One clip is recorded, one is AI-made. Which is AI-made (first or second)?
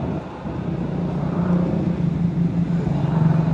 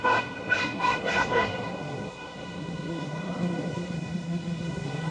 second